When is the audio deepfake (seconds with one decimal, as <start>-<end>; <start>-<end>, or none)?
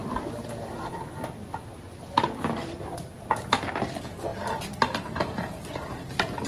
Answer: none